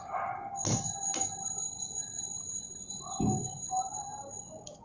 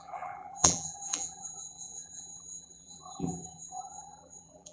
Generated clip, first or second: second